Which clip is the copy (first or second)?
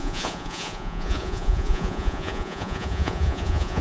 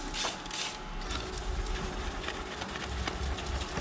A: first